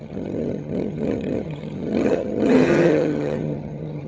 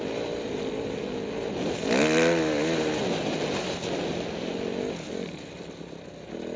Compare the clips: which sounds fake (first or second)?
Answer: first